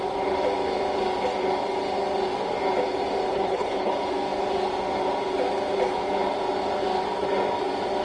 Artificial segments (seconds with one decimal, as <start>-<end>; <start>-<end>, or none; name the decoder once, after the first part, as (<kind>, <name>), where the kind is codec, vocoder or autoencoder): 3.3-3.9 (codec, HILCodec)